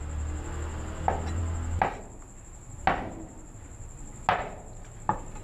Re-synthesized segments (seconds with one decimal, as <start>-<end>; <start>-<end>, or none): none